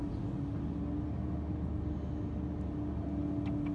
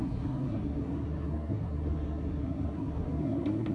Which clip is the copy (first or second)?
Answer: second